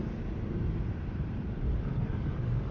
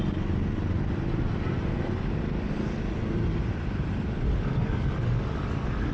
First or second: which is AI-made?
first